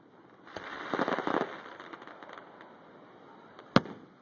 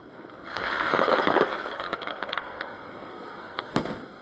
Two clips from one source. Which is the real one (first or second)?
first